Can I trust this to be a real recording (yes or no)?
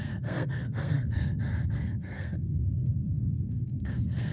no